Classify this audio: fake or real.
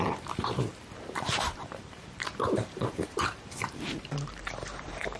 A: fake